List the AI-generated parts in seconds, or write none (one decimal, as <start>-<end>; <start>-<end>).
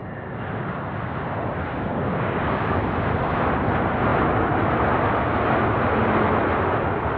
1.9-2.8